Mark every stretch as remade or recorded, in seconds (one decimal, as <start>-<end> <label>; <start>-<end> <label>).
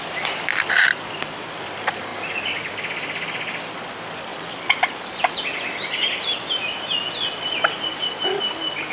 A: 0.0-8.9 recorded